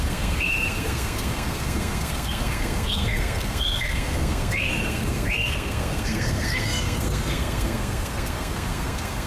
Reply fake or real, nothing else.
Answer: fake